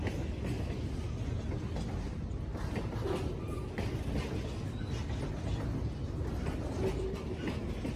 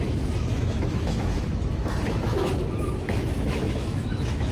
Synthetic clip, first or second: second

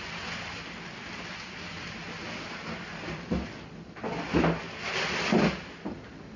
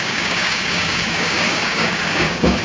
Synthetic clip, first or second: second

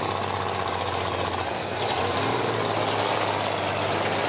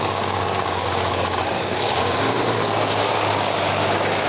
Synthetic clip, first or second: second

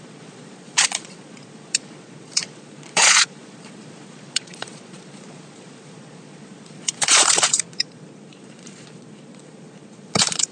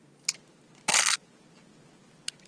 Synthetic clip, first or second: first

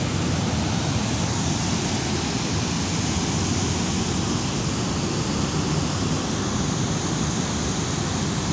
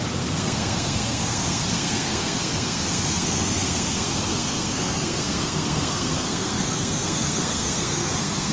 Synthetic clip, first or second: second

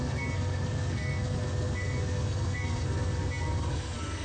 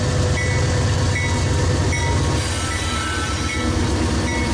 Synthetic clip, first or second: first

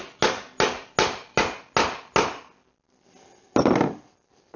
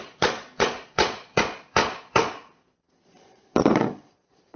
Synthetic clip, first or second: second